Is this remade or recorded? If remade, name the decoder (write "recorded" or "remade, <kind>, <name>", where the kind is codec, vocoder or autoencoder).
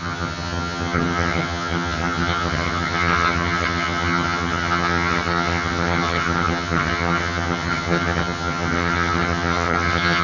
remade, vocoder, HiFi-GAN